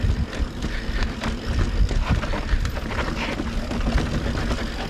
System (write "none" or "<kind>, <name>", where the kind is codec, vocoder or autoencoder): none